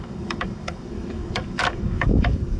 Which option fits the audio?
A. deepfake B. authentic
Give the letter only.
A